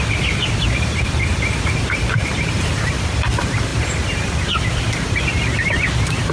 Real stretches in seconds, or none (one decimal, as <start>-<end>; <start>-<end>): 0.0-6.3